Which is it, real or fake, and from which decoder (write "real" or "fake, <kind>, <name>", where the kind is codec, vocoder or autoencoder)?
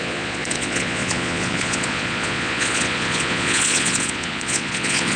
fake, vocoder, Vocos